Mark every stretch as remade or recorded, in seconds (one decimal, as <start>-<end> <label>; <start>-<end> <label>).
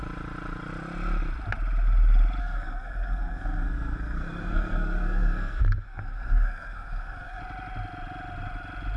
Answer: 0.0-2.4 recorded; 2.4-7.4 remade; 7.4-9.0 recorded